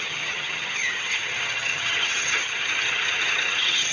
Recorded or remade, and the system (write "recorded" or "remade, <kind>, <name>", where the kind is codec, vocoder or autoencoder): remade, vocoder, HiFi-GAN